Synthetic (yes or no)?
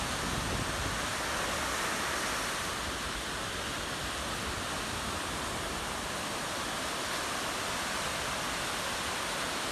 no